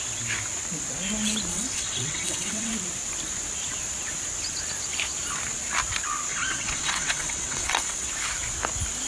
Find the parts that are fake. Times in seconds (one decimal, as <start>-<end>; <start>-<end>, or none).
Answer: 1.5-2.7; 6.3-8.1